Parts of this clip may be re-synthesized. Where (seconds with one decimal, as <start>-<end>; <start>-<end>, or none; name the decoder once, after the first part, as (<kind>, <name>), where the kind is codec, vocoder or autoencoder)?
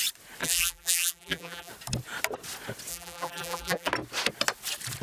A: 0.4-1.7 (vocoder, BigVGAN v2); 2.9-3.9